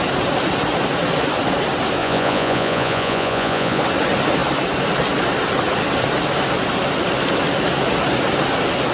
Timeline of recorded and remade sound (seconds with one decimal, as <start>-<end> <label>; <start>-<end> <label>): 0.0-2.0 recorded; 2.0-3.8 remade; 3.8-8.9 recorded